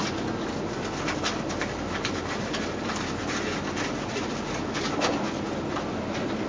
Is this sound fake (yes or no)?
no